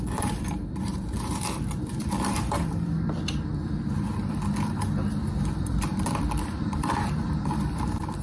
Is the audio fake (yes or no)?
yes